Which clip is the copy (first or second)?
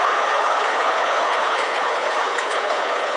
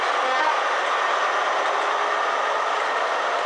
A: first